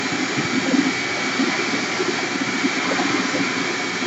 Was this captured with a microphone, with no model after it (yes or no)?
yes